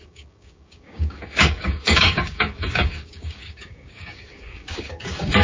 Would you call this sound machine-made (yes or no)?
yes